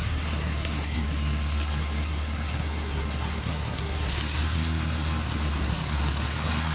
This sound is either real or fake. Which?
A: fake